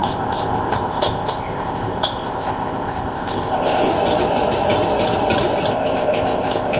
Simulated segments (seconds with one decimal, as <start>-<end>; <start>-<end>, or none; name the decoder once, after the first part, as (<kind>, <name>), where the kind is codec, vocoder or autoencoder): 0.0-3.9 (codec, ZipCodec); 5.7-6.8